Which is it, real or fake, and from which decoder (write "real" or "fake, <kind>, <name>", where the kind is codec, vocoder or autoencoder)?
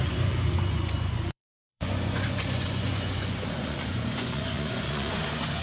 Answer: fake, vocoder, Vocos